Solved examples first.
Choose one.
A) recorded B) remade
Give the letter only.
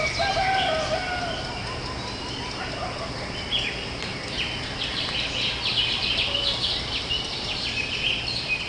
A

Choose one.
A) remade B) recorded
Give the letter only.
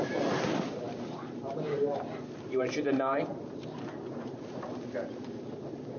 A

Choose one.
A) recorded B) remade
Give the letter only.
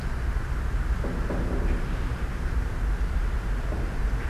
A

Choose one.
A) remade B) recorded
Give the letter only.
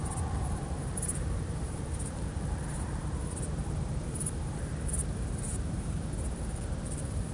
A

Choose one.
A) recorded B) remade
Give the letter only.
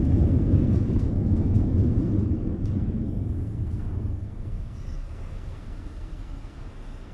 B